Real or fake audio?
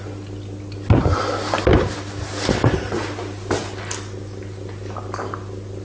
real